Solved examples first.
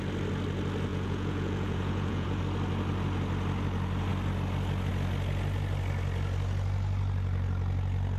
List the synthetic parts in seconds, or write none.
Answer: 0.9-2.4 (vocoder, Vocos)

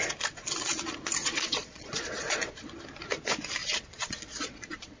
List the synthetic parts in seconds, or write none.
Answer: 1.2-2.7 (vocoder, Vocos); 3.6-5.0

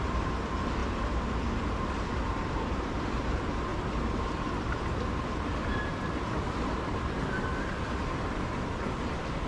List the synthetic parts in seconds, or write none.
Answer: none

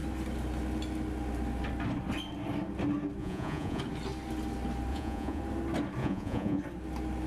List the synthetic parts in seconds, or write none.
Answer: 3.2-3.8 (vocoder, Vocos); 4.9-5.4; 6.0-6.6

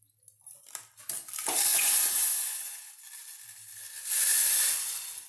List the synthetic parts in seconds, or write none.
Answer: 1.7-2.9 (vocoder, Vocos)

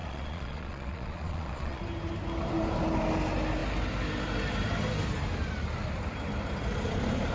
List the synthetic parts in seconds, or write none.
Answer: 0.0-1.8 (vocoder, Vocos)